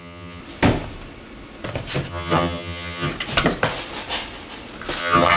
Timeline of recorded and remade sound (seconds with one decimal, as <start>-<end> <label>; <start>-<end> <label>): 0.0-0.4 remade; 0.4-2.1 recorded; 2.1-3.1 remade; 3.1-5.0 recorded; 5.0-5.4 remade